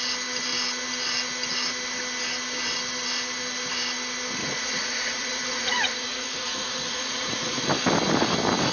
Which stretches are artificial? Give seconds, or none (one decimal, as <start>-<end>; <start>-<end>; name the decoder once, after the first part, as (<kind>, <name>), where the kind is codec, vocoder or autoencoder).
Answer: 4.4-7.6 (vocoder, Vocos)